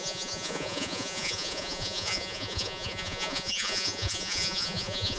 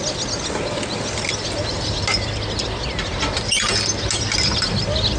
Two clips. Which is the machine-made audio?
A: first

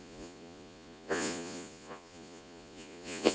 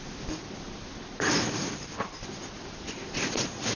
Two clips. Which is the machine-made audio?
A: first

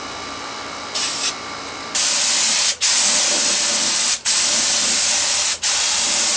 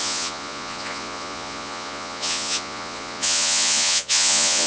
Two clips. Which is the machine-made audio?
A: second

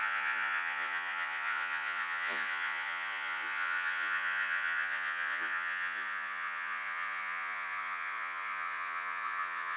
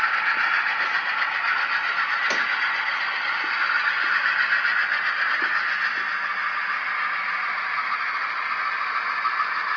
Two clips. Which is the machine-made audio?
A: first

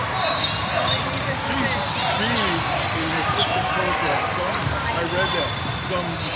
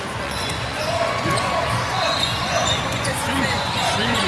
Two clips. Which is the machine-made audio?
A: second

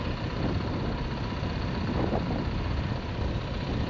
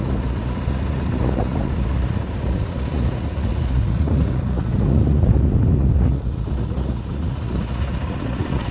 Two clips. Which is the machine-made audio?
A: second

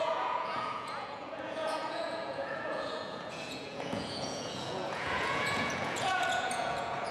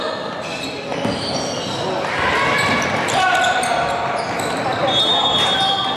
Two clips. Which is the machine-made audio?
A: first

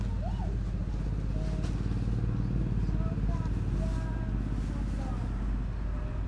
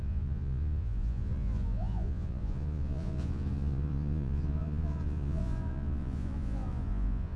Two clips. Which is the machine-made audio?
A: second